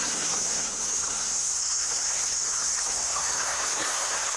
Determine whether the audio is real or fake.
fake